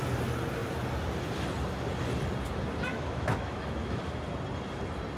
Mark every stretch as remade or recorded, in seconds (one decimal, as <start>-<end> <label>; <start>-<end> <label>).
0.0-2.9 recorded; 2.9-4.0 remade; 4.0-5.2 recorded